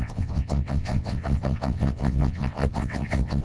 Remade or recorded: remade